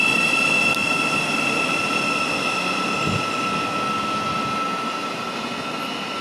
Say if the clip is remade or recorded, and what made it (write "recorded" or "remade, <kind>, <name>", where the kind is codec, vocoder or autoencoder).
recorded